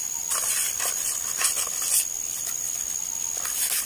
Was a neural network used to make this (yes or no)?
no